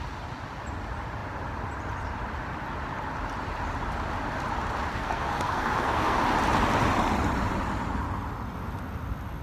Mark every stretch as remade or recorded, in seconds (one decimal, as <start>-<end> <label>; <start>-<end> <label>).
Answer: 0.0-4.9 recorded; 4.9-6.2 remade; 6.2-9.4 recorded